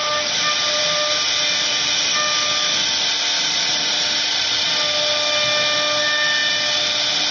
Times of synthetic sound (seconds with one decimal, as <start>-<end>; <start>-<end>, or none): none